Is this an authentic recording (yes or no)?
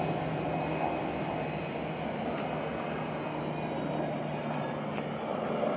yes